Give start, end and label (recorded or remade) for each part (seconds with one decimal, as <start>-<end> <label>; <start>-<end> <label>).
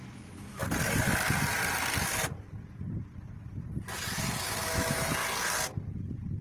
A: 0.0-0.6 remade; 0.6-4.4 recorded; 4.4-5.2 remade; 5.2-6.4 recorded